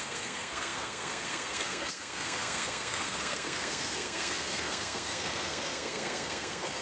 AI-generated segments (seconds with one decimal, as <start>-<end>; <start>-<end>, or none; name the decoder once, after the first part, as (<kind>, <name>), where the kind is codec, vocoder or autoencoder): 0.0-6.8 (codec, SNAC)